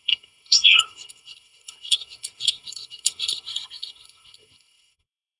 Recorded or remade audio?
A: remade